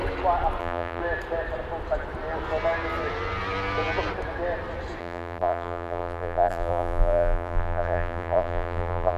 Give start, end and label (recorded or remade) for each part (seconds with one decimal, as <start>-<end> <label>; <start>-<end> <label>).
0.0-0.6 recorded; 0.6-1.0 remade; 1.0-5.0 recorded; 5.0-9.2 remade